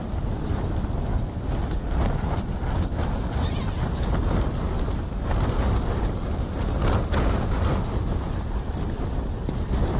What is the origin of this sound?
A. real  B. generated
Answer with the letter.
A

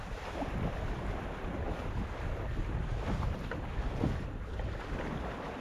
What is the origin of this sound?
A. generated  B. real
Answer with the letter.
B